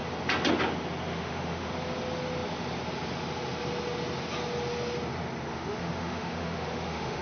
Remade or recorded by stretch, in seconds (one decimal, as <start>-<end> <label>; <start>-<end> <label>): 0.0-1.1 recorded; 1.1-1.7 remade; 1.7-5.5 recorded; 5.5-7.2 remade